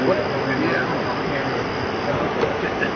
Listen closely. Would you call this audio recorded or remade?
recorded